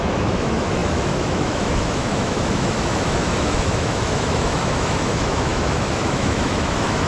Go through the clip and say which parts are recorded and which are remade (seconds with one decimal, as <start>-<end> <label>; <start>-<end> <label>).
0.0-7.1 remade